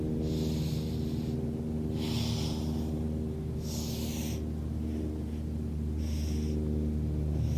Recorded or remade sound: recorded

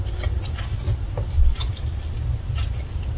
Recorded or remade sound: recorded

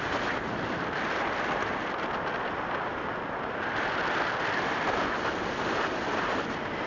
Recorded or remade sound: recorded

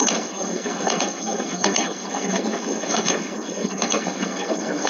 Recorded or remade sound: remade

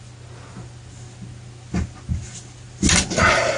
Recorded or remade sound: recorded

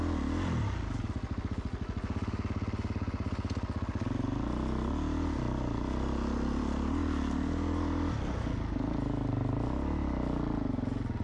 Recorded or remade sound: recorded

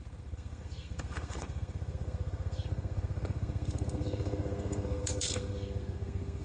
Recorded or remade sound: remade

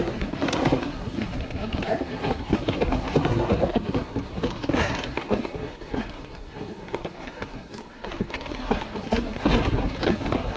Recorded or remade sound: remade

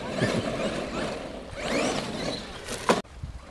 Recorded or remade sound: recorded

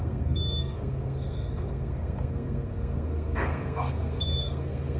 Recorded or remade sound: remade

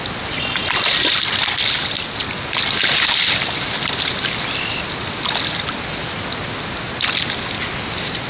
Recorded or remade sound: recorded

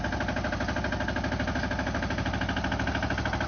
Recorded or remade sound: recorded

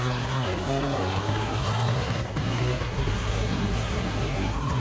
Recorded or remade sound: remade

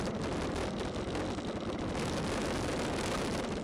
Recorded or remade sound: recorded